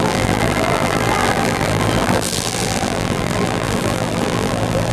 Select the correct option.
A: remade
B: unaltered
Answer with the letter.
A